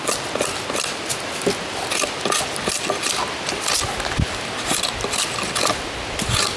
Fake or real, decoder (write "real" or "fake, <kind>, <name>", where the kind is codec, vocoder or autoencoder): real